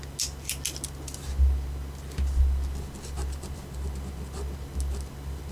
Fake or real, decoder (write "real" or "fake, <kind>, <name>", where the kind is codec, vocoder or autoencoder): real